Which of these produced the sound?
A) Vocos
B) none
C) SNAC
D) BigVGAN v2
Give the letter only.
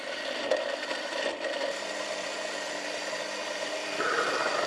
D